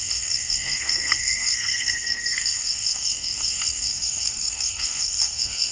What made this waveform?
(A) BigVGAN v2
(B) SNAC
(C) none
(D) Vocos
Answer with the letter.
B